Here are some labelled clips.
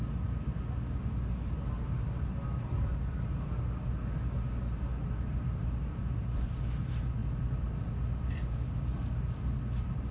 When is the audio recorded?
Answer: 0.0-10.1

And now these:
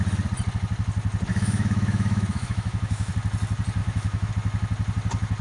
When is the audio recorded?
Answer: 0.0-1.3; 3.1-3.8; 4.3-5.4

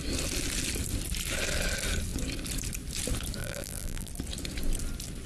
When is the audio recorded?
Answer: 0.0-3.4; 4.1-5.3

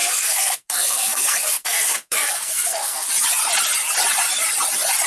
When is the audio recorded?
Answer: 3.1-5.1

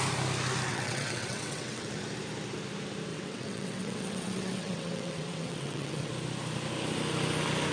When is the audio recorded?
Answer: 0.0-0.7; 1.9-3.1; 6.1-7.7

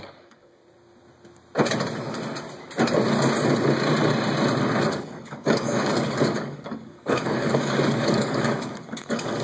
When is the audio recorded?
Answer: 0.6-4.9

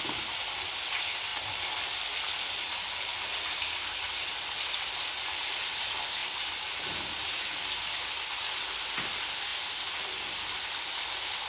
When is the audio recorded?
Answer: 0.0-11.5